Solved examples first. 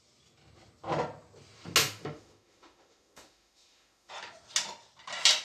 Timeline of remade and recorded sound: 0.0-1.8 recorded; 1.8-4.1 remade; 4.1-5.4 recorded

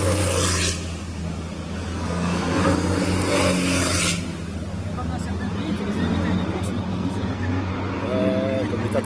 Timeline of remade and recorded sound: 0.0-1.9 recorded; 1.9-2.6 remade; 2.6-6.9 recorded; 6.9-7.7 remade; 7.7-9.0 recorded

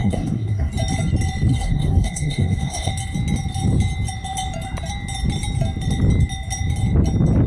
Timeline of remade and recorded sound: 0.0-0.7 remade; 0.7-1.5 recorded; 1.5-2.9 remade; 2.9-7.5 recorded

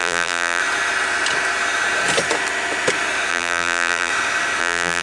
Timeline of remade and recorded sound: 0.0-0.6 remade; 0.6-3.3 recorded; 3.3-4.1 remade; 4.1-4.6 recorded; 4.6-5.0 remade

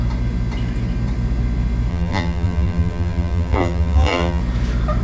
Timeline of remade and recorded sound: 0.0-1.9 recorded; 1.9-4.4 remade; 4.4-5.0 recorded

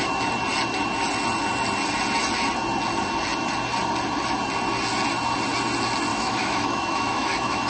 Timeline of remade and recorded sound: 0.0-6.1 recorded; 6.1-7.7 remade

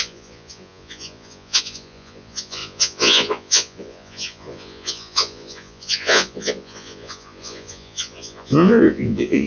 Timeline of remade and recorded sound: 0.0-9.5 remade

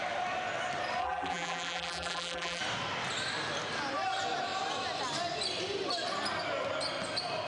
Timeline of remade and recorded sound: 0.0-1.0 recorded; 1.0-2.6 remade; 2.6-7.5 recorded